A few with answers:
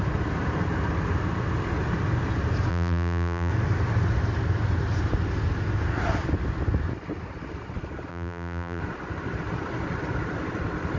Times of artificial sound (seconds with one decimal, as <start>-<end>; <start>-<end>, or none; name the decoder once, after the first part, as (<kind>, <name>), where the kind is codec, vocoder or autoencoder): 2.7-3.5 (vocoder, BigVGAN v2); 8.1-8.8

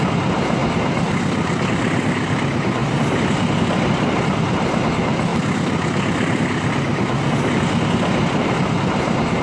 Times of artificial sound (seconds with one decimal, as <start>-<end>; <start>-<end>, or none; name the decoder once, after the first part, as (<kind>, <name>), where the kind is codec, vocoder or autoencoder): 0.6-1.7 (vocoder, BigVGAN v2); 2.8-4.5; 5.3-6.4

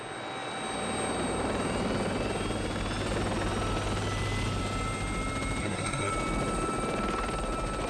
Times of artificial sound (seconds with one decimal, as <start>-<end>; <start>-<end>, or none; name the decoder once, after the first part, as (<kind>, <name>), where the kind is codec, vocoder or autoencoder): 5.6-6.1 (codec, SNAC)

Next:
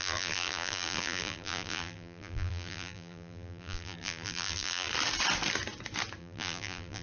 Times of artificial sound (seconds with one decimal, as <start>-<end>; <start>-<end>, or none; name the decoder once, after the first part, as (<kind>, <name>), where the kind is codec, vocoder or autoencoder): 0.0-4.9 (vocoder, BigVGAN v2); 6.2-7.0

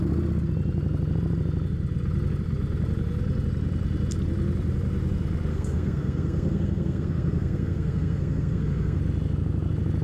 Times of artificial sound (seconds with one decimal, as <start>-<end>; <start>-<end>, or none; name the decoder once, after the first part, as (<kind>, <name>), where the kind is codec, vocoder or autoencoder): 5.5-9.0 (codec, SNAC)

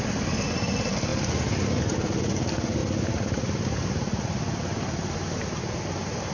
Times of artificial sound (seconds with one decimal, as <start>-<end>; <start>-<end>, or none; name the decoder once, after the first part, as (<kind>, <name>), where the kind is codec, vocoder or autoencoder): none

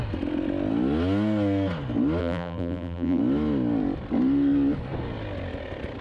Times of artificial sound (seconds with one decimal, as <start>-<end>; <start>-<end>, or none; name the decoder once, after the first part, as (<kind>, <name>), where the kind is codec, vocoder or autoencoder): 2.2-3.2 (vocoder, BigVGAN v2)

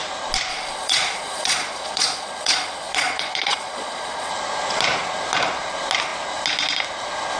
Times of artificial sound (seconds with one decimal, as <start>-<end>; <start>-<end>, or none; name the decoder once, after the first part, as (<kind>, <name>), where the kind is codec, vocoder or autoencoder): 0.5-4.3 (vocoder, Vocos)